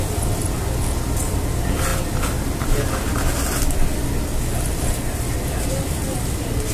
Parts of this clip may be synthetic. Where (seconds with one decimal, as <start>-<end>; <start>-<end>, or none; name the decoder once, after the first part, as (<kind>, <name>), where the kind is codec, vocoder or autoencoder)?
none